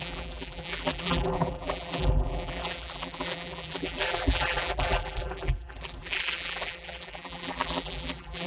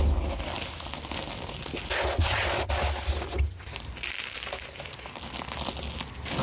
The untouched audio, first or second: second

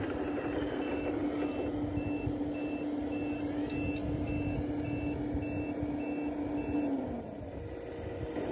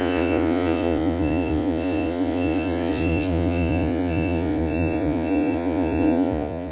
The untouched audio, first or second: first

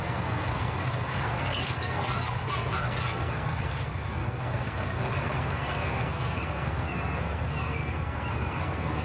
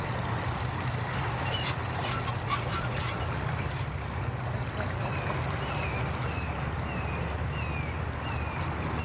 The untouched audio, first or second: second